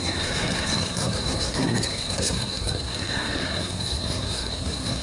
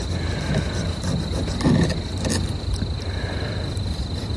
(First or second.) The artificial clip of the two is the first